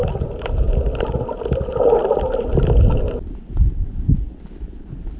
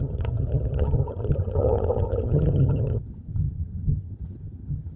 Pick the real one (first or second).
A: first